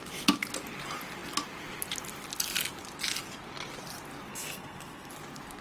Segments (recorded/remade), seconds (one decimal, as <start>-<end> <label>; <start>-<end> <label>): 0.0-4.3 recorded; 4.3-5.1 remade; 5.1-5.6 recorded